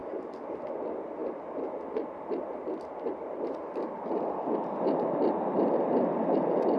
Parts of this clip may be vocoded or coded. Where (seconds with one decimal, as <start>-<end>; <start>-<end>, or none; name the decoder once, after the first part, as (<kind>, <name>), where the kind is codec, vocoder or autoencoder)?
none